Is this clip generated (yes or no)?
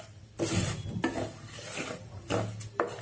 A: no